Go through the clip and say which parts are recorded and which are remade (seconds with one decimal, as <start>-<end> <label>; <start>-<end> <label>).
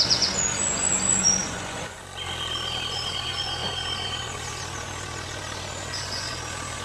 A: 0.0-2.0 remade; 2.0-2.9 recorded; 2.9-6.8 remade